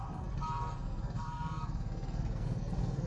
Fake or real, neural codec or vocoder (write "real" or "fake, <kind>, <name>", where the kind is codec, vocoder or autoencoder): fake, codec, SNAC